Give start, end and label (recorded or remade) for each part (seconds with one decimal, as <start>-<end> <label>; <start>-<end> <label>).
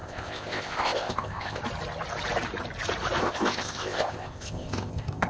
0.0-1.6 remade; 1.6-3.2 recorded; 3.2-5.3 remade